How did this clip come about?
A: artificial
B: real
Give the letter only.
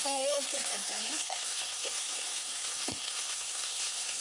A